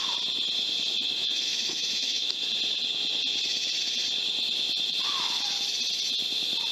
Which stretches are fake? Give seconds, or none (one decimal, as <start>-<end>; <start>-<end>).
0.9-2.4